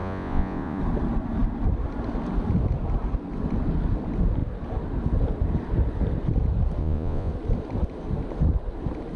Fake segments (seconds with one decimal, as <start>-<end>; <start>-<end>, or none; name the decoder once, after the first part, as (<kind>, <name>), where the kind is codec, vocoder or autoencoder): 0.0-0.8 (vocoder, Vocos); 6.8-7.3